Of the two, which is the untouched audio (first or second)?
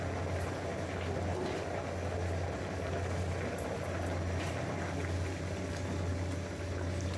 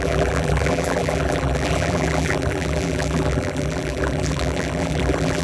first